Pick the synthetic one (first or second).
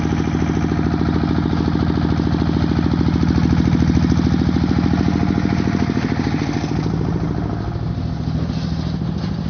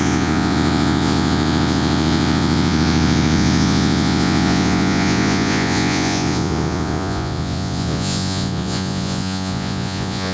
second